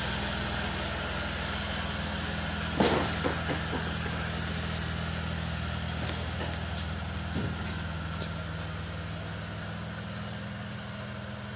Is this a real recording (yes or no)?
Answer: yes